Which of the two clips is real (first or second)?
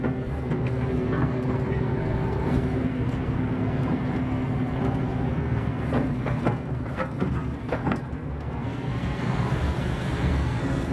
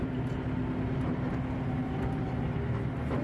second